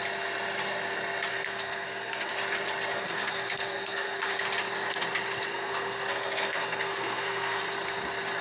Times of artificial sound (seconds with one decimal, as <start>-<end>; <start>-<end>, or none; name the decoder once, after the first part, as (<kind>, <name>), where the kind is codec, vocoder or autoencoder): 1.3-2.3 (codec, SNAC); 2.9-4.4; 5.5-7.6